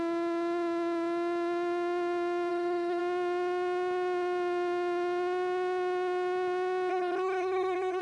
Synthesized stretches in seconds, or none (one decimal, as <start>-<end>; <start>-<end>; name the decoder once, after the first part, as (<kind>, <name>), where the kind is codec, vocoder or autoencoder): 2.5-3.0 (codec, SNAC); 6.9-8.0